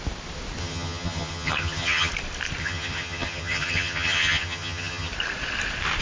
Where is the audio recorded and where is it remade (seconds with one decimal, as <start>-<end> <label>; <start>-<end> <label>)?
0.0-0.6 recorded; 0.6-2.1 remade; 2.1-2.6 recorded; 2.6-5.1 remade; 5.1-6.0 recorded